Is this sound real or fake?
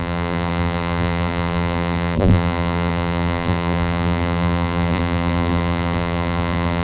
fake